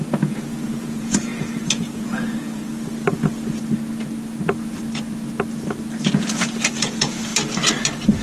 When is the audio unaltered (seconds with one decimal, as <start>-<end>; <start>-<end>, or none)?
2.6-6.3; 7.3-8.2